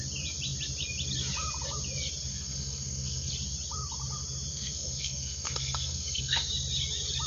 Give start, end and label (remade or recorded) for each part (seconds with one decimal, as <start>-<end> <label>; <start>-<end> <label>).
0.0-2.3 recorded; 2.3-3.3 remade; 3.3-4.5 recorded; 4.5-6.5 remade; 6.5-7.3 recorded